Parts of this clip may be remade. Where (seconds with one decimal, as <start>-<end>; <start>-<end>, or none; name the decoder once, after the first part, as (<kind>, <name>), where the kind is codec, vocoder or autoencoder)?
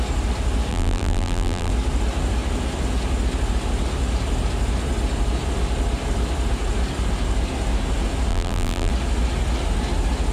0.7-1.7 (vocoder, BigVGAN v2); 8.3-8.9